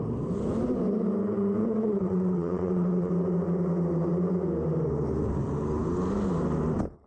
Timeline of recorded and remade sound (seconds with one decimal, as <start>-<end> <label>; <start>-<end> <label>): 0.0-1.6 recorded; 1.6-3.1 remade; 3.1-7.1 recorded